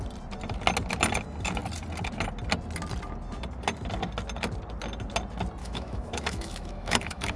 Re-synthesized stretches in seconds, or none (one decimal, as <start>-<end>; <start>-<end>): 5.6-7.4